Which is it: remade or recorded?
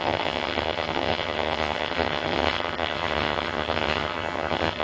remade